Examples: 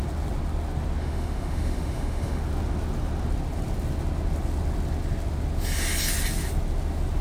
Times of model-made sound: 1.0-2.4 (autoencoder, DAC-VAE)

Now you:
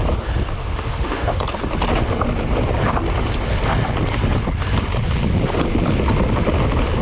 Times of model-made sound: 0.6-1.4 (autoencoder, DAC-VAE)

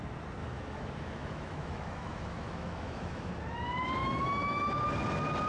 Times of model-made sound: 0.4-3.3 (autoencoder, DAC-VAE); 4.0-4.7